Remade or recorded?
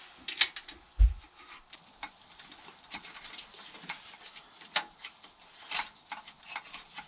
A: recorded